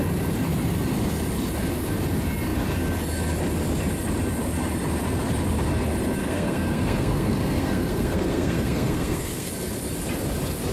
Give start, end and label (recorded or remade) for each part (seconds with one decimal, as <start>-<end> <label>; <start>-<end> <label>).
0.0-6.2 recorded; 6.2-9.5 remade; 9.5-10.7 recorded